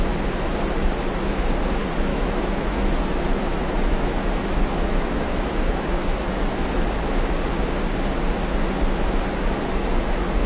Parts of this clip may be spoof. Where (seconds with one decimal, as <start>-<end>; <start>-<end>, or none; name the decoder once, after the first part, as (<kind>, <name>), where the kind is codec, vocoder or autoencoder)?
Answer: 2.1-6.5 (autoencoder, DAC-VAE); 9.8-10.5